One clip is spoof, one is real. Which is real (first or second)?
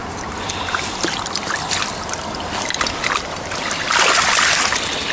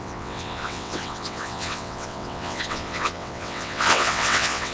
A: first